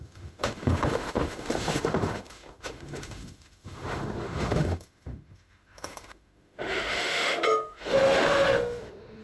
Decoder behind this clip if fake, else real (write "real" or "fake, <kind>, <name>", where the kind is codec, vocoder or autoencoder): fake, autoencoder, DAC-VAE